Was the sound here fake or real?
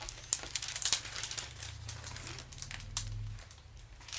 real